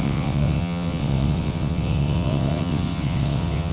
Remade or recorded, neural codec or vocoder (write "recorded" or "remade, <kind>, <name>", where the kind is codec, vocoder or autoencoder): remade, vocoder, WaveNeXt